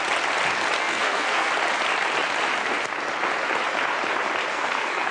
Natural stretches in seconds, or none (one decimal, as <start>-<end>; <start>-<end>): 0.0-0.8; 1.5-4.5